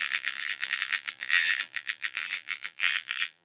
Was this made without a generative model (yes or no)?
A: no